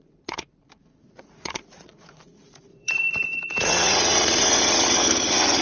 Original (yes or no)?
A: no